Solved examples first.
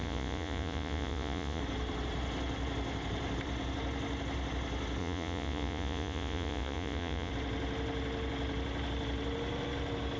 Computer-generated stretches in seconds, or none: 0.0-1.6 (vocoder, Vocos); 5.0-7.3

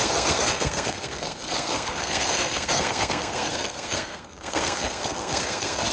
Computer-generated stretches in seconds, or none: 0.0-5.9 (codec, SNAC)

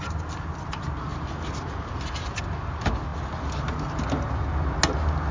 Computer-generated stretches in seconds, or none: none

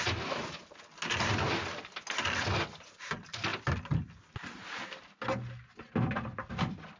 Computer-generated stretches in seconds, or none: none

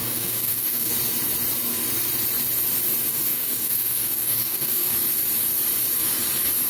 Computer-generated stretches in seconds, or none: 0.0-0.9 (codec, DAC); 3.1-4.9

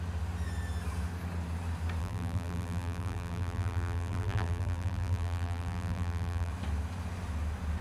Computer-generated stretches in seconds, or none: 2.0-6.5 (vocoder, BigVGAN v2)

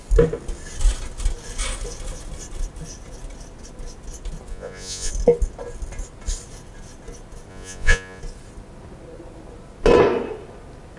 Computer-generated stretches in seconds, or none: 4.5-5.1 (vocoder, Vocos); 7.5-8.2

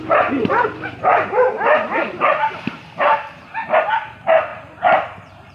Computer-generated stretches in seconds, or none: 1.0-2.8 (vocoder, BigVGAN v2); 4.5-5.5